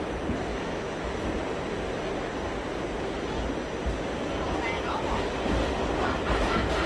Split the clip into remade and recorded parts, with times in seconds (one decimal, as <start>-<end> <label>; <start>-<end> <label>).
0.0-0.5 recorded; 0.5-1.1 remade; 1.1-6.9 recorded